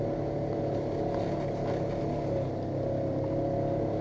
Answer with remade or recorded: recorded